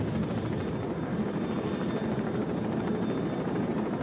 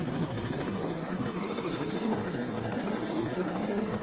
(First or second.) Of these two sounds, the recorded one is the first